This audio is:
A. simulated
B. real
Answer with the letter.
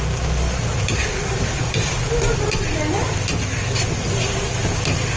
B